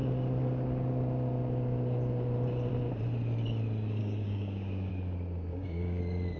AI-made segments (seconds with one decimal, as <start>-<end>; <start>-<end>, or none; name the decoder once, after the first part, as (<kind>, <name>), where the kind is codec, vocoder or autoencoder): 4.0-4.9 (codec, DAC); 5.5-6.0